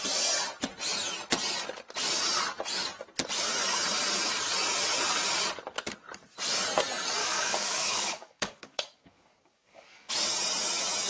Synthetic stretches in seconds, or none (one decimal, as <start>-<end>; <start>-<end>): 7.2-10.1